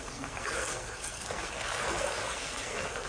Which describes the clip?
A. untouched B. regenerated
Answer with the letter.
B